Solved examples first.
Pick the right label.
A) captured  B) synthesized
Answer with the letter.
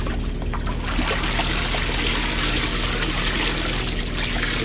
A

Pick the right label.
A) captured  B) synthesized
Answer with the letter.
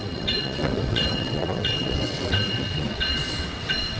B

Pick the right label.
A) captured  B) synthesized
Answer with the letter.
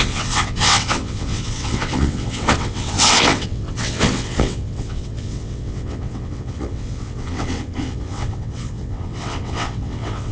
B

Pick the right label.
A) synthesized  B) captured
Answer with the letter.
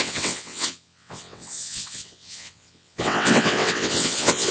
A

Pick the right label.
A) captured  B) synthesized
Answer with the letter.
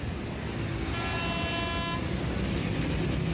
A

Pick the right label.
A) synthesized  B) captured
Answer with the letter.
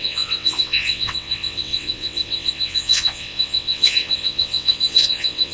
A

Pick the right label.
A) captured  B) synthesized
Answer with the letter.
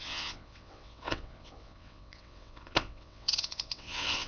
B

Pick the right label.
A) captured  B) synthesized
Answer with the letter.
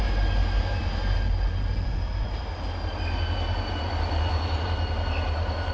A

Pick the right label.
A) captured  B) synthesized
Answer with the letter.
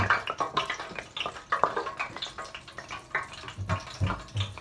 A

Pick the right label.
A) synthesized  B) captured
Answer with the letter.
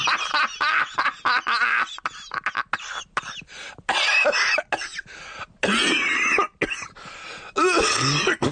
B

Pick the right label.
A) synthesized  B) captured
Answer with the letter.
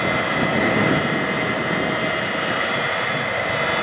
B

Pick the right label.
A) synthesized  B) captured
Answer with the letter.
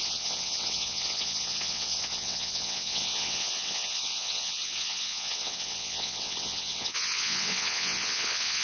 A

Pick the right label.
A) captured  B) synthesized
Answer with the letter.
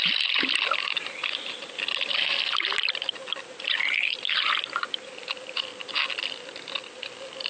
A